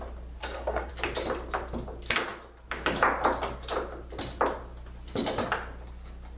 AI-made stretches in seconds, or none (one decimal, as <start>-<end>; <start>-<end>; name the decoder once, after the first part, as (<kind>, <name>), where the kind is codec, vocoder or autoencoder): 0.4-0.9 (codec, SNAC)